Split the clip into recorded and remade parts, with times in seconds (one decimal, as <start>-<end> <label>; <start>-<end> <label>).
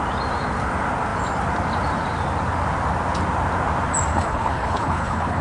0.0-4.1 recorded; 4.1-5.4 remade